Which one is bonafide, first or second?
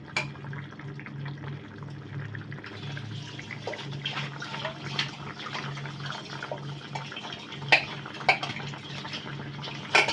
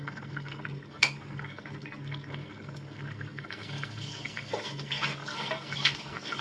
first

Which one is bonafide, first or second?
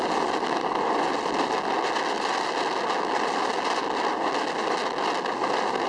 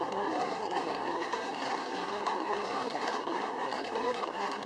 first